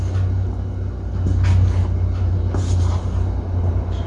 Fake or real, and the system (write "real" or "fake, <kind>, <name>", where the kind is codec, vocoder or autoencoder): real